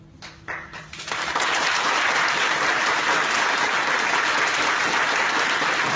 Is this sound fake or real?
real